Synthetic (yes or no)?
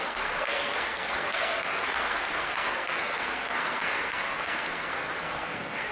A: yes